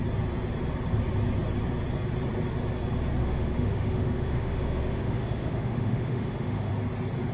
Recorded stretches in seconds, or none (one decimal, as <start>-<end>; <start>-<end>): 0.0-3.2; 6.7-7.3